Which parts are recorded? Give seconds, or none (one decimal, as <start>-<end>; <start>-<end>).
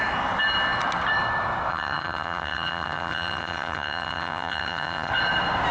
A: 0.0-1.7; 5.1-5.7